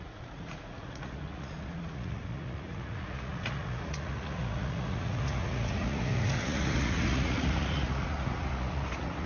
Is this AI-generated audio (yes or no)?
yes